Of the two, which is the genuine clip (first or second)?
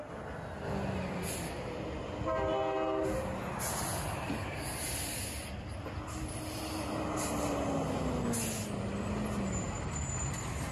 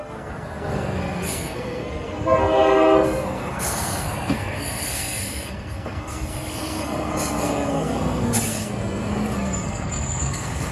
first